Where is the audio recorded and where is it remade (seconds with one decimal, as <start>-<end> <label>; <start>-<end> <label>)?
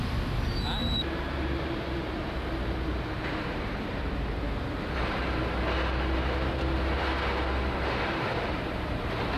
0.0-0.8 recorded; 0.8-5.4 remade; 5.4-8.3 recorded; 8.3-8.8 remade; 8.8-9.4 recorded